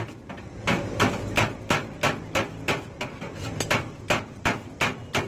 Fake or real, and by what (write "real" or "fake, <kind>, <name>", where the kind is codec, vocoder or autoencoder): real